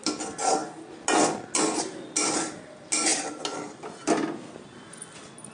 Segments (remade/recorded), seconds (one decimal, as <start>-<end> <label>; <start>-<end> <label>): 0.0-5.5 recorded